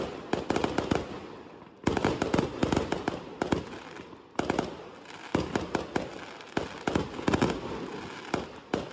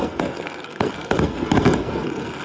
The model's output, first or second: second